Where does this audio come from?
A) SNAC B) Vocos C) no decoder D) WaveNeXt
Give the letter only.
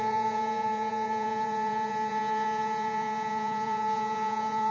B